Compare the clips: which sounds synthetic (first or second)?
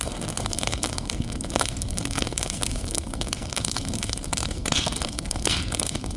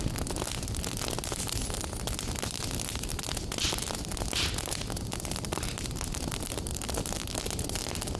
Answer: first